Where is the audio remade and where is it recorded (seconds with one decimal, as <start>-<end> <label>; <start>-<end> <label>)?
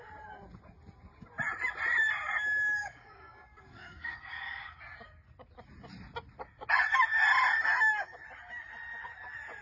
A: 0.0-2.8 recorded; 2.8-4.8 remade; 4.8-9.6 recorded